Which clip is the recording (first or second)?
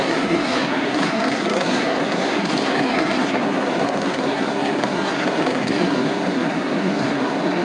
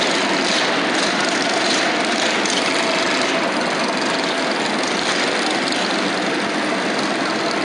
second